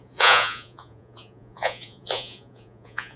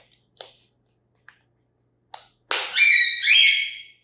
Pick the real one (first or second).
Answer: second